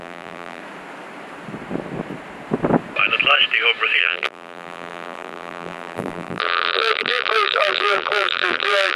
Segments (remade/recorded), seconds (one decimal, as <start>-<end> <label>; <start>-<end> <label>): 0.0-0.6 remade; 0.6-4.0 recorded; 4.0-9.0 remade